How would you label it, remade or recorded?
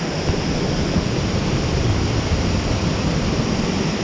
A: remade